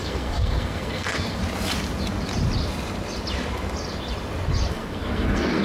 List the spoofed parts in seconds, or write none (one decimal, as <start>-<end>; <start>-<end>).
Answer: 0.0-1.4; 4.7-5.6